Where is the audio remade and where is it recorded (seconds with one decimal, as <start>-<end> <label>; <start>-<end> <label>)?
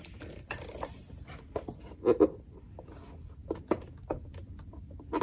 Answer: 0.0-5.2 recorded